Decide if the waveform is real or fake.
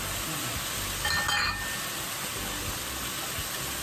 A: real